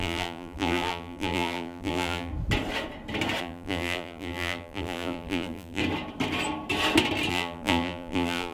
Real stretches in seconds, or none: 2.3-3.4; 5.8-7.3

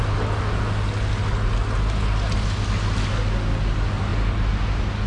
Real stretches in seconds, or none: 0.0-5.1

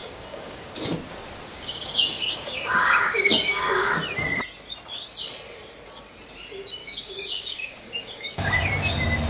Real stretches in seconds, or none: 0.6-1.5; 3.9-6.8; 8.5-9.3

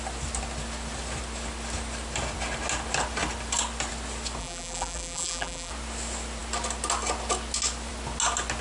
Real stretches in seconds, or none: 0.0-4.4; 5.7-8.6

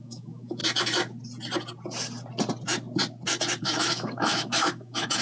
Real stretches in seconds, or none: 0.6-3.6